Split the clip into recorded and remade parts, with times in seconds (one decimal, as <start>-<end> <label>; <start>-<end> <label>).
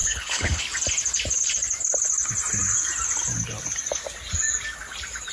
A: 0.0-0.6 remade; 0.6-5.3 recorded